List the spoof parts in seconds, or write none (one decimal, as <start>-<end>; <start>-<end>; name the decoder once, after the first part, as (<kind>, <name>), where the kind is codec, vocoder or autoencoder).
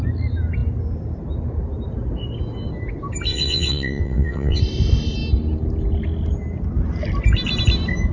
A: 3.3-4.6 (vocoder, WaveNeXt)